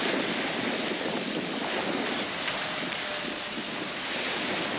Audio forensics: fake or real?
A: real